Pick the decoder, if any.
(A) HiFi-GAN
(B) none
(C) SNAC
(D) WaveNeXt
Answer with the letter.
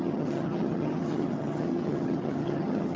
A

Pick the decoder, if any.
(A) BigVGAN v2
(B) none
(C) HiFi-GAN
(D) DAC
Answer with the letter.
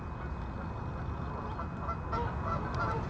B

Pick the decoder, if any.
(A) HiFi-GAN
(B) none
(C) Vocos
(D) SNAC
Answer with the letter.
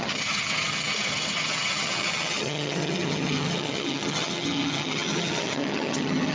A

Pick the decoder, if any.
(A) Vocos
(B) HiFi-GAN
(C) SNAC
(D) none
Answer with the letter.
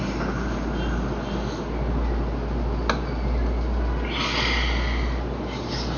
D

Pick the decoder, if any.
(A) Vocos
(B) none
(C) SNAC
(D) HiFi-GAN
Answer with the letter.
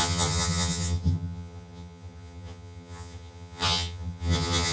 D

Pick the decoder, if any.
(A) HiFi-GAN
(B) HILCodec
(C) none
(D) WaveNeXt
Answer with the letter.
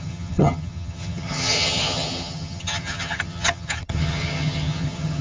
A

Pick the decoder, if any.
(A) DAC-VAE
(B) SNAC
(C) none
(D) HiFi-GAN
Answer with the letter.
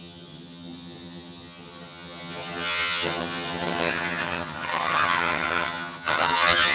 D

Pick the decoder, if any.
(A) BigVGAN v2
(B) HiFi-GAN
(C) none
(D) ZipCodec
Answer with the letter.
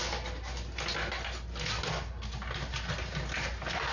C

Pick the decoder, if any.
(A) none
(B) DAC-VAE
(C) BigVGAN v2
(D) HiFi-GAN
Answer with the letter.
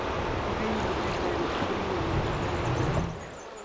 A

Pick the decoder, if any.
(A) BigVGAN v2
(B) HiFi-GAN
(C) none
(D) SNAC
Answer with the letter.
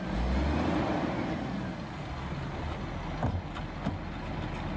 C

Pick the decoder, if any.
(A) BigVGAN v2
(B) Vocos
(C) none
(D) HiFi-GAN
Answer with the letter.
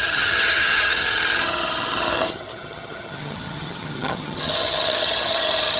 D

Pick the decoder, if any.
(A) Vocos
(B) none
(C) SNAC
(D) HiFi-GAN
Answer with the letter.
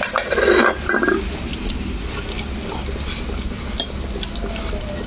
B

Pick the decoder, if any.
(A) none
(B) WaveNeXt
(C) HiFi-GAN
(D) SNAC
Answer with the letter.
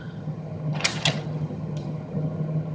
C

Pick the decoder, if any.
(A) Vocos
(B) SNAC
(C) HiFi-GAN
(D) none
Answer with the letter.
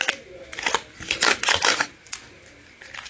D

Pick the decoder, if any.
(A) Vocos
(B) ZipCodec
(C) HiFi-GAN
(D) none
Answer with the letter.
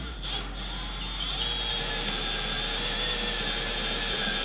D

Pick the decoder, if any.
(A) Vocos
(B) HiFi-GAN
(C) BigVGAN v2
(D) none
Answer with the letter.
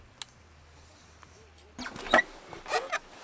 D